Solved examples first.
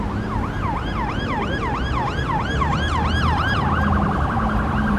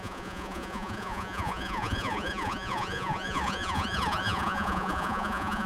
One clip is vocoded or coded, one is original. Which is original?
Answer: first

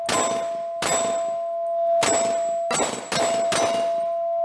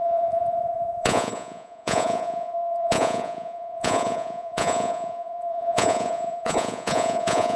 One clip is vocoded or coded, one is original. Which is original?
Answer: first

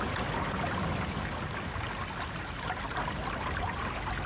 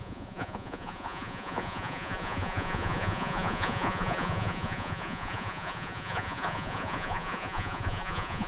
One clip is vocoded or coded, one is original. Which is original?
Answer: first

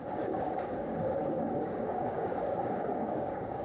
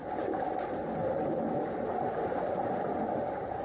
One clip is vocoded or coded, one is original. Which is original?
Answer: second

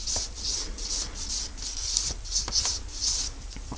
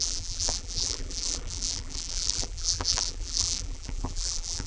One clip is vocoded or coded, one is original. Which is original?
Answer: first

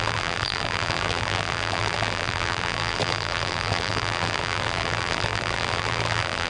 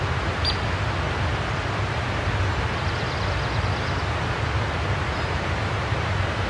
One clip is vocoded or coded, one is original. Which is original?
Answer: second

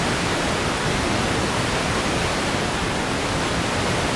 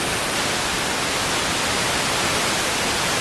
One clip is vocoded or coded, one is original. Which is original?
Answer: first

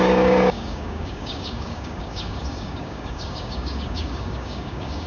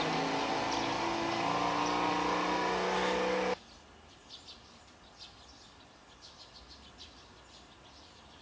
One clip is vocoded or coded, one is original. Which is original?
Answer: second